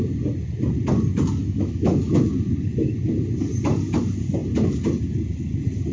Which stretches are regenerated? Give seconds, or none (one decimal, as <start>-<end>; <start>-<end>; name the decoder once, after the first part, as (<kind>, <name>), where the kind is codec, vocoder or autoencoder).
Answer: 1.4-2.3 (autoencoder, DAC-VAE)